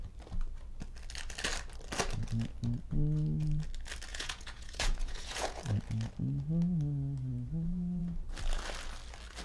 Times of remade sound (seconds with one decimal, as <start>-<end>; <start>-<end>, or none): 4.1-5.6